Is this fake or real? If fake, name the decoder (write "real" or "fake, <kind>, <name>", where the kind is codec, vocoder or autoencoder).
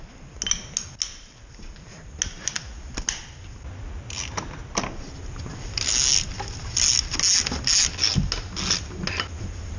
real